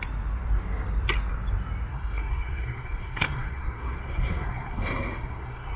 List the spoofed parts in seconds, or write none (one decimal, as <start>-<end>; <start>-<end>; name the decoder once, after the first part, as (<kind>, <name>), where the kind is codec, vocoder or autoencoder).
1.9-5.8 (codec, SNAC)